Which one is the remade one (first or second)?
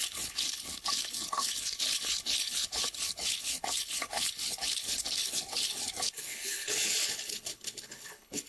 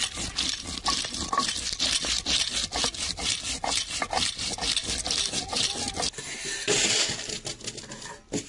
first